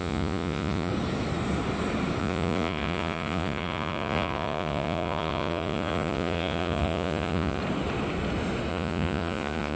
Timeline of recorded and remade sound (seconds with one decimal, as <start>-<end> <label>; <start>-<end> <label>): 0.0-0.9 remade; 0.9-2.2 recorded; 2.2-7.6 remade; 7.6-8.7 recorded; 8.7-9.8 remade